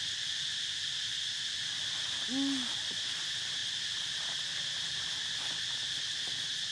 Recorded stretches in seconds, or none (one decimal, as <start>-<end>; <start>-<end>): 0.0-6.7